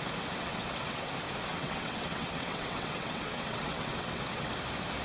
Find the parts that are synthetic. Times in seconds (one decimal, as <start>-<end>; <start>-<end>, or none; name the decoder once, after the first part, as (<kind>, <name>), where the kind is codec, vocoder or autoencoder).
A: 0.4-1.1 (vocoder, WaveNeXt); 1.5-4.5